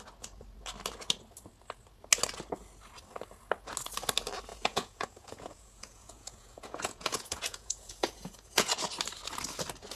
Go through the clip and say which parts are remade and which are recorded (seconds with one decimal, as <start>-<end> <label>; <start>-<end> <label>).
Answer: 0.0-4.5 recorded; 4.5-8.7 remade; 8.7-10.0 recorded